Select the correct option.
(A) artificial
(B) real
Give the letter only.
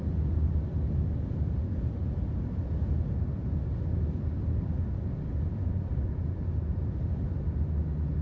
B